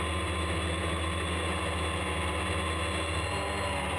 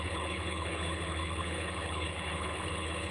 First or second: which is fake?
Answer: second